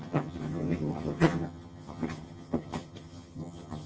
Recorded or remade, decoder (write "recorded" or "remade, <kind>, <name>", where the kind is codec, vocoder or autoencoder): remade, vocoder, HiFi-GAN